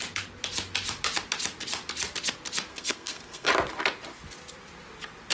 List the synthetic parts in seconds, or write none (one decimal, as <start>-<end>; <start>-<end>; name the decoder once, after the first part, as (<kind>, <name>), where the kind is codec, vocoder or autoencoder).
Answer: 2.7-3.5 (codec, SNAC)